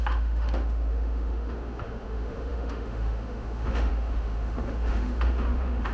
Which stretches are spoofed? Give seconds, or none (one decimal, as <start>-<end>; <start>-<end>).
0.0-5.9